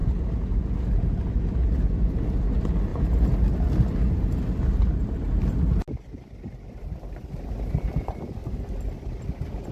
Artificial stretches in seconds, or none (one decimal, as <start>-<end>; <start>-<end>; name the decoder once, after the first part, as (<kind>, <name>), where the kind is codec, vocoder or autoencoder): none